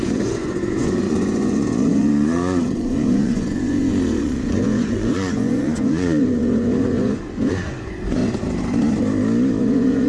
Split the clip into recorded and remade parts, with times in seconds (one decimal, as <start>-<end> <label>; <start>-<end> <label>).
0.0-8.2 remade; 8.2-9.6 recorded; 9.6-10.1 remade